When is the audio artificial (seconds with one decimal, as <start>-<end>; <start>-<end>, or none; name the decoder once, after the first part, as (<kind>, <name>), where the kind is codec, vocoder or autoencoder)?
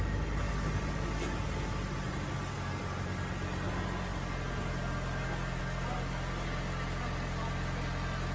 none